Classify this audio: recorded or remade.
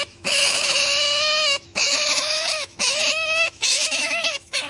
remade